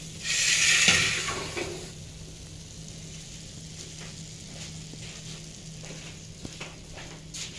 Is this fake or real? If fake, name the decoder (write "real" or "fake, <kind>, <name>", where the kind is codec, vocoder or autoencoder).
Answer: real